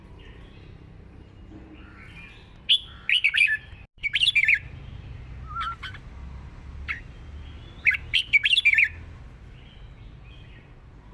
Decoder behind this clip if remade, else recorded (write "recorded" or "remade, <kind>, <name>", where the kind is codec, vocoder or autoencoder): recorded